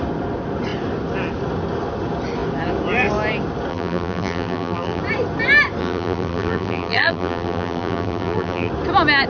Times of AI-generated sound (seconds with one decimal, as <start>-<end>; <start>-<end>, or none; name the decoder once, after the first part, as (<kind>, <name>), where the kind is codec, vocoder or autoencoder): 3.7-5.0 (vocoder, BigVGAN v2); 5.8-8.7